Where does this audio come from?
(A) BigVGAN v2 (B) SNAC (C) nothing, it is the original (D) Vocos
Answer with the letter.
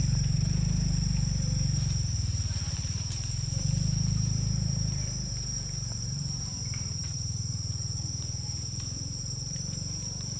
A